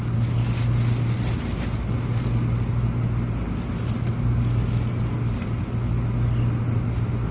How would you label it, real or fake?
real